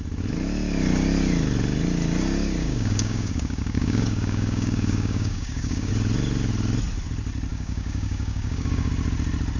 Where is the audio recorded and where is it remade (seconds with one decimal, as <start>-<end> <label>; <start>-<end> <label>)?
0.0-2.6 recorded; 2.6-5.9 remade; 5.9-7.5 recorded; 7.5-8.9 remade; 8.9-9.6 recorded